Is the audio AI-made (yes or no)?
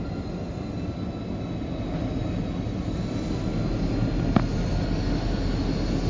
no